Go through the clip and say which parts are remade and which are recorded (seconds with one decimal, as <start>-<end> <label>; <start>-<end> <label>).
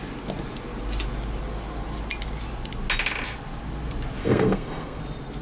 0.0-4.2 recorded; 4.2-5.0 remade; 5.0-5.4 recorded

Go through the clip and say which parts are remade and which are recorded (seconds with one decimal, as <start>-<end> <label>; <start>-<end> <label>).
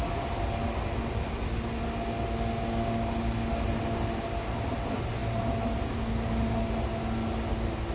0.0-7.9 recorded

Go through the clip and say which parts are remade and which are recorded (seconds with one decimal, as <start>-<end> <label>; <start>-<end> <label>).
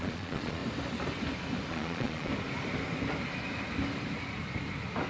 0.0-0.6 remade; 0.6-1.7 recorded; 1.7-2.3 remade; 2.3-5.1 recorded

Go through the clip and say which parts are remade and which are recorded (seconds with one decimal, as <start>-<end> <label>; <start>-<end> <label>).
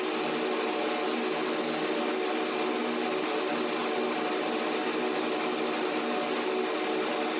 0.0-7.4 recorded